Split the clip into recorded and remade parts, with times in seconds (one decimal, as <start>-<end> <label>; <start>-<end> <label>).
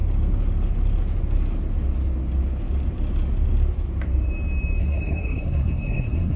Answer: 0.0-4.8 recorded; 4.8-6.4 remade